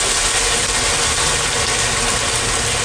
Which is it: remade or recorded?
recorded